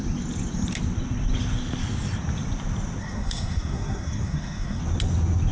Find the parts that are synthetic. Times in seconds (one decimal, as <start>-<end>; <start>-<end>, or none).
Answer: 3.0-4.8